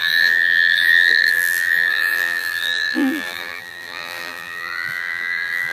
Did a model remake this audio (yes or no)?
yes